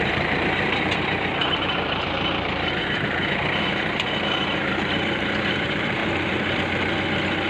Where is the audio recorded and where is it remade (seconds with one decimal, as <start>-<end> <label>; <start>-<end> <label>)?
0.0-6.0 remade; 6.0-7.5 recorded